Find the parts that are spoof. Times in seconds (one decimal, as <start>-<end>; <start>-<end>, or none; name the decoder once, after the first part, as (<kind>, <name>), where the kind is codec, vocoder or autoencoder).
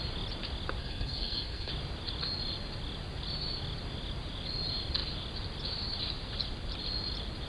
0.8-1.7 (codec, SNAC)